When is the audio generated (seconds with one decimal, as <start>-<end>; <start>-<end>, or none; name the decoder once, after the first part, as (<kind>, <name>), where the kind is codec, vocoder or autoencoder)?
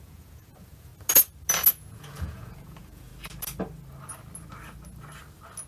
0.0-0.9 (vocoder, Vocos); 1.7-3.1